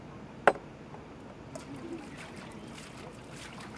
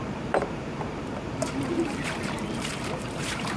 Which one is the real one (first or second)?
first